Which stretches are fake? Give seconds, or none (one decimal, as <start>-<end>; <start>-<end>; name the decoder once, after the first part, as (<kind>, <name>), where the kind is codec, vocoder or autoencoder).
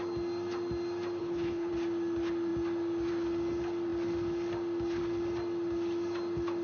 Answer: 1.2-1.7 (codec, HILCodec)